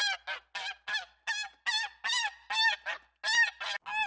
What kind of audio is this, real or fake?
real